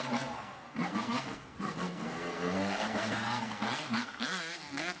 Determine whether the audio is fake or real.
fake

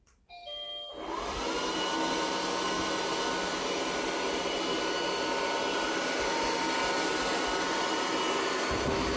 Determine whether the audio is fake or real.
real